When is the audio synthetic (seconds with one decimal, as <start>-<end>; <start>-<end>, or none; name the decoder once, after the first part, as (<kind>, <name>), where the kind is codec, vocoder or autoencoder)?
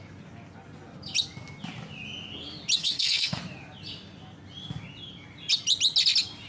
2.8-3.4 (codec, SNAC)